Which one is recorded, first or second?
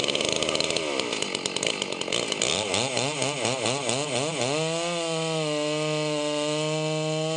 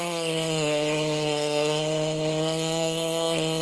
first